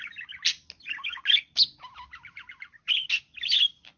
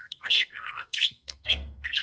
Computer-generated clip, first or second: second